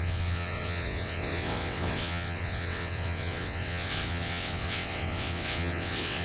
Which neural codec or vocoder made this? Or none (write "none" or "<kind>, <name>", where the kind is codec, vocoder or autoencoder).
vocoder, WaveNeXt